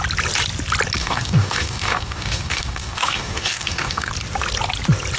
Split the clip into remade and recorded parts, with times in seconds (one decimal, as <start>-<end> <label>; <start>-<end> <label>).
0.0-1.0 recorded; 1.0-4.1 remade; 4.1-5.2 recorded